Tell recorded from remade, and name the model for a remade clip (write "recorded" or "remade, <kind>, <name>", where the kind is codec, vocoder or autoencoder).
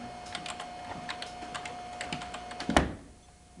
recorded